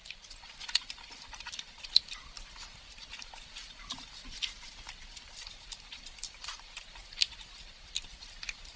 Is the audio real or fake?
fake